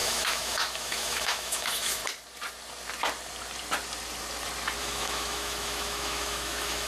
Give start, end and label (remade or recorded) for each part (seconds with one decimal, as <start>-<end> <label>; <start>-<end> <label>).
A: 0.0-2.0 remade; 2.0-4.8 recorded; 4.8-6.9 remade